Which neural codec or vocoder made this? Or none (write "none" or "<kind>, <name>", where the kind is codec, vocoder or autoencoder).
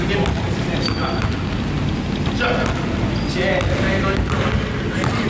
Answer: none